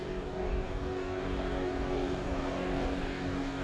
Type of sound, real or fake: fake